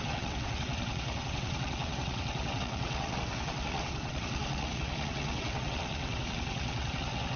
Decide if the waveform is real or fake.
fake